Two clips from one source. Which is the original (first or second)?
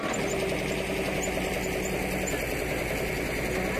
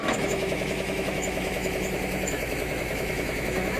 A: first